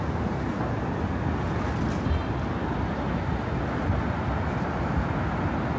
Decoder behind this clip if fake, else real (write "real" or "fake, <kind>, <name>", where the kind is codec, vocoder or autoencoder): real